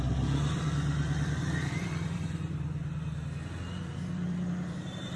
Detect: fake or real fake